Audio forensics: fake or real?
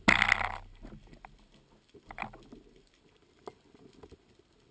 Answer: real